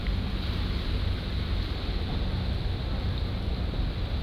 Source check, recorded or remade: recorded